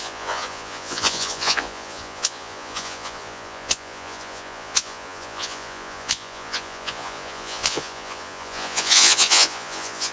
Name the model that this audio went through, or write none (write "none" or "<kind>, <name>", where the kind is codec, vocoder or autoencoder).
vocoder, Vocos